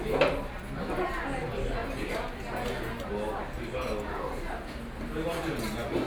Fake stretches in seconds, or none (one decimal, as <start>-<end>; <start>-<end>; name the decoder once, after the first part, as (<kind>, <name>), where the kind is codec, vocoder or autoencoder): 1.8-2.4 (vocoder, BigVGAN v2)